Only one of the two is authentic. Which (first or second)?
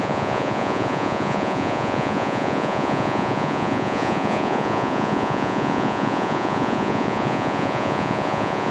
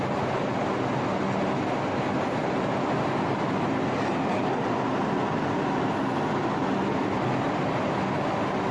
second